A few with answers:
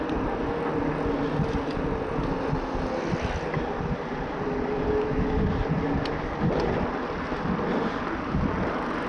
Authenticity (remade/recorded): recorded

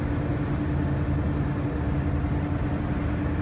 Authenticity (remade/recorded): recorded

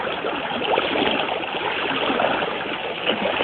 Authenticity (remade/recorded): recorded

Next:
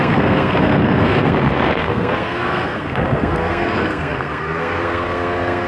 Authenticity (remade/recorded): remade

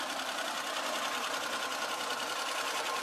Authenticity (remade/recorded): recorded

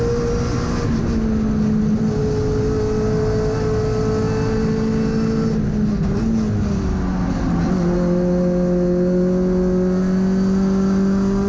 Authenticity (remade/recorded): recorded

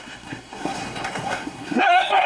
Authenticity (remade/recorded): remade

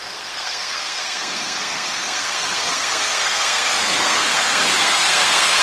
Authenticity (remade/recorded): remade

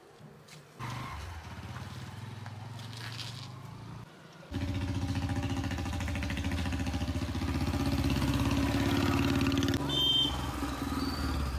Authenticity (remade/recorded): recorded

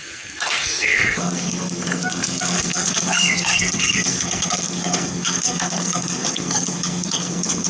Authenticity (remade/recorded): remade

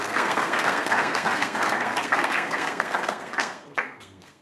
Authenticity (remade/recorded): remade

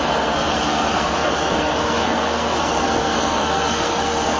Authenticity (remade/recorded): remade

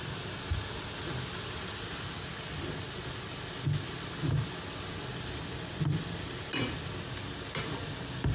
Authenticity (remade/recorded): recorded